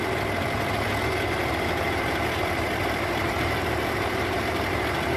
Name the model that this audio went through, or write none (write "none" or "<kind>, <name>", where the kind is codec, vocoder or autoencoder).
none